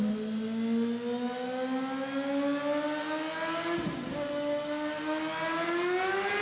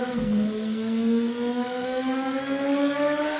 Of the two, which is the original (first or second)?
first